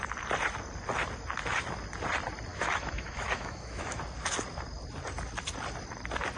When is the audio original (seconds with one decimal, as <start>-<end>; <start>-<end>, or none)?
0.0-2.5; 4.0-6.4